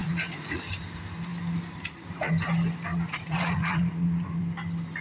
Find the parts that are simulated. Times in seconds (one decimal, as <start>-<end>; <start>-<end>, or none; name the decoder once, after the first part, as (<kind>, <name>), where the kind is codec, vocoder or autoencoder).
0.0-0.7 (vocoder, Vocos); 2.9-4.4